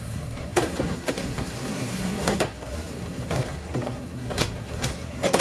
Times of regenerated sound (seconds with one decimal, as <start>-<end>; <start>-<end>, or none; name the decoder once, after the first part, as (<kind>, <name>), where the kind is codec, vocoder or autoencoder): 0.0-5.4 (codec, SNAC)